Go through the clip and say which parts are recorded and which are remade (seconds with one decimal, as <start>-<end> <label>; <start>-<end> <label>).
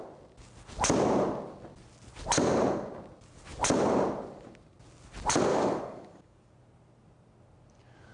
0.0-5.5 recorded; 5.5-6.5 remade; 6.5-8.1 recorded